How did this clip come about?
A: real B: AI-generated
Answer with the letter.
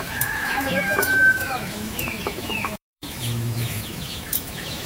B